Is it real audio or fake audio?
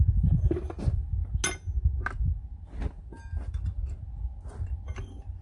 real